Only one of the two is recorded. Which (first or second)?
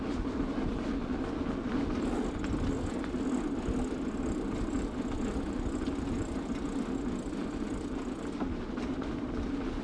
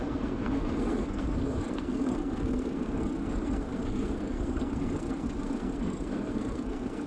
first